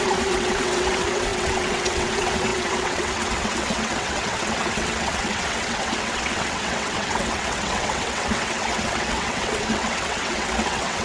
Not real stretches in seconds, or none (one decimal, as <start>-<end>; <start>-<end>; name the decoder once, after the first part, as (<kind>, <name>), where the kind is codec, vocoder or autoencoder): 0.0-11.0 (vocoder, WaveNeXt)